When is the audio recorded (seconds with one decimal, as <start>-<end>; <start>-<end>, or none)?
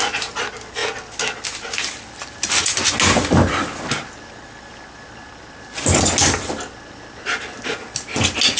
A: 0.0-8.6